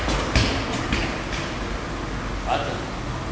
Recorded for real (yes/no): yes